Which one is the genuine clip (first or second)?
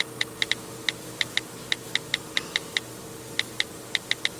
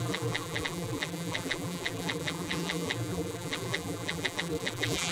first